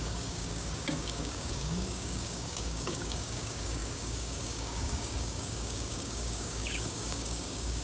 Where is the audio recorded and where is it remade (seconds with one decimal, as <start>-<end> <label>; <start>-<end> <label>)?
0.0-7.8 remade

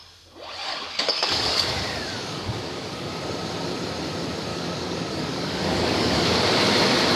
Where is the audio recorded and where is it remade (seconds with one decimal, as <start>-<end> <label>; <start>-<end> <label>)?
0.0-0.6 recorded; 0.6-3.2 remade; 3.2-4.5 recorded; 4.5-6.3 remade; 6.3-7.2 recorded

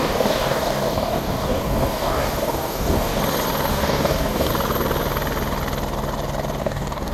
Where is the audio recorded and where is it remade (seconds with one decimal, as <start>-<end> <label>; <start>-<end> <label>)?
0.0-3.2 remade; 3.2-3.7 recorded; 3.7-4.5 remade; 4.5-6.6 recorded; 6.6-7.1 remade

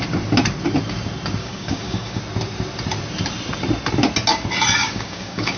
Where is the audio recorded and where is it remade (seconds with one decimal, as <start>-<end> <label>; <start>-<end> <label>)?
0.0-1.4 recorded; 1.4-2.2 remade; 2.2-4.8 recorded; 4.8-5.6 remade